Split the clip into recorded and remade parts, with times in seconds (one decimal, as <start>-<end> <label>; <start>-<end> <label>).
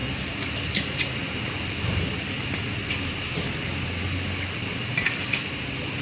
0.0-6.0 recorded